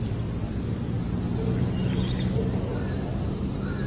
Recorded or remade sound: recorded